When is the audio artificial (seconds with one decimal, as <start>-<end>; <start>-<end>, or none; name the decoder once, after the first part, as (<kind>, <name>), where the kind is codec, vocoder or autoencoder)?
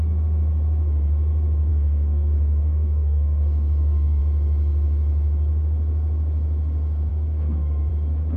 1.7-4.2 (codec, SNAC); 7.1-7.9